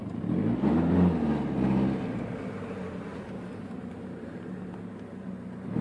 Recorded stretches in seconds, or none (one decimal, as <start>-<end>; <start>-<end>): 0.0-5.8